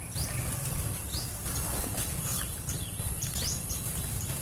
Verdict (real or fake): fake